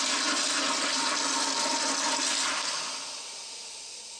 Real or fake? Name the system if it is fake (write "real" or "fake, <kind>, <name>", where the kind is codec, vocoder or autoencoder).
real